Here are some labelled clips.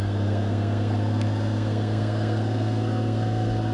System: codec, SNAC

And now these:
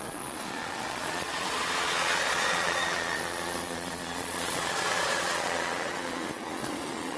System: vocoder, Vocos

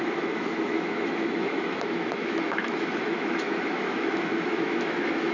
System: autoencoder, DAC-VAE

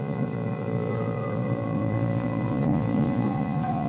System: vocoder, Vocos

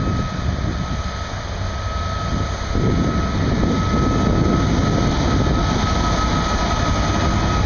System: none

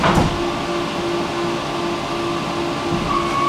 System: none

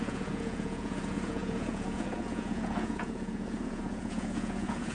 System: vocoder, Vocos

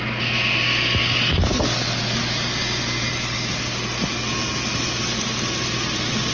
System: none